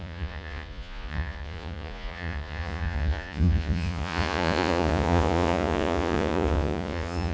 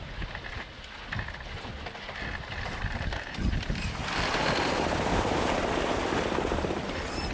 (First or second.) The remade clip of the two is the first